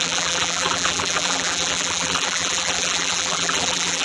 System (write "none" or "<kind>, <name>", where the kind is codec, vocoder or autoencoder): vocoder, BigVGAN v2